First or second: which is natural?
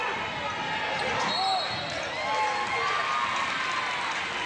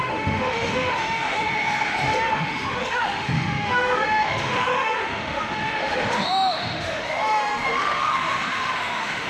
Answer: first